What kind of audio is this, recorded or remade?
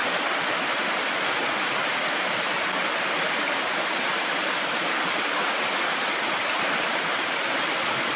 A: recorded